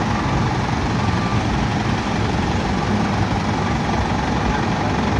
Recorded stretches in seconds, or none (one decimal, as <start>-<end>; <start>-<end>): 0.0-1.3; 4.0-5.2